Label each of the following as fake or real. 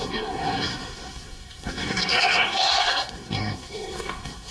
fake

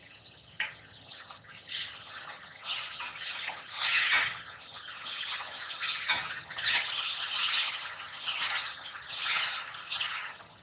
fake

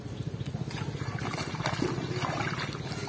real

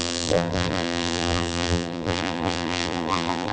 fake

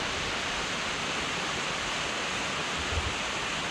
real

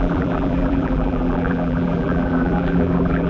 fake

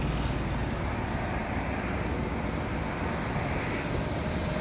real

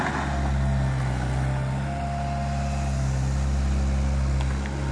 real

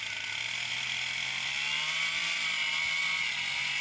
real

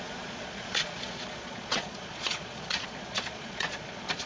fake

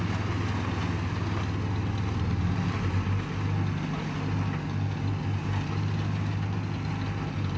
real